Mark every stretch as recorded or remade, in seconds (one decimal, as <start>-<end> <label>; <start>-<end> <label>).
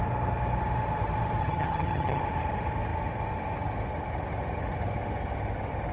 0.0-1.4 recorded; 1.4-2.2 remade; 2.2-5.9 recorded